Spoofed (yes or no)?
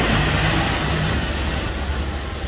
no